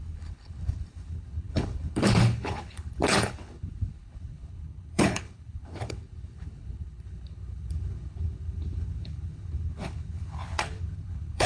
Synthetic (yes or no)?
yes